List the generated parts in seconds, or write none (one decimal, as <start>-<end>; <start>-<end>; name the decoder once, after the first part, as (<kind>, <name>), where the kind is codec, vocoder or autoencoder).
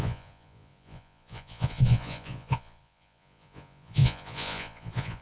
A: 0.0-5.2 (vocoder, Vocos)